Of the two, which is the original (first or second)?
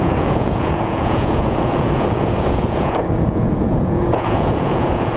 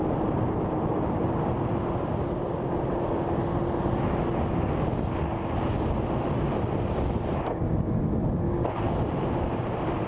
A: second